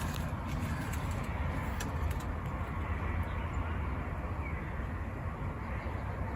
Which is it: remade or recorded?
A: recorded